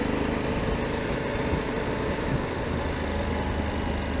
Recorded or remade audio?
recorded